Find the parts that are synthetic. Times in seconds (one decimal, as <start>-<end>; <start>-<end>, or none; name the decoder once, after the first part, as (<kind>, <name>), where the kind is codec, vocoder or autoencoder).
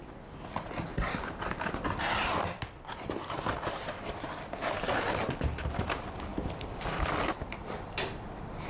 0.9-3.7 (vocoder, BigVGAN v2); 6.3-8.7